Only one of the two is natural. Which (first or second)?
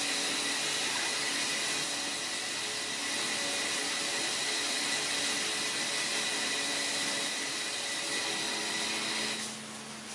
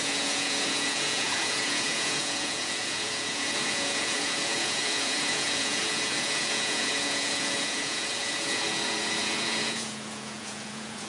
first